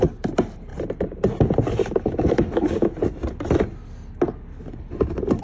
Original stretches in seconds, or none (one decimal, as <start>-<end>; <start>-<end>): 0.0-5.4